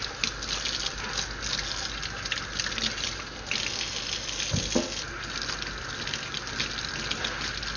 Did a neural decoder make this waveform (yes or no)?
no